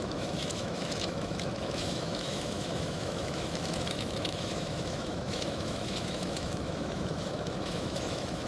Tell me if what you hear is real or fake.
fake